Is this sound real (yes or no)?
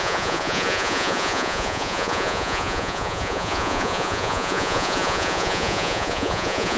no